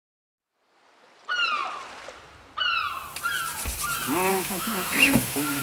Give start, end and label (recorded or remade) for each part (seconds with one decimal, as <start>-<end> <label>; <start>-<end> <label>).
0.0-4.3 recorded; 4.3-5.6 remade